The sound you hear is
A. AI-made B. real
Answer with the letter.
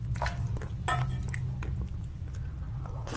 B